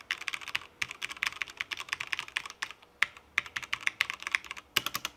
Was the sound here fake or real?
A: real